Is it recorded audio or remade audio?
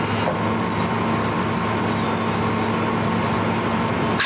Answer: recorded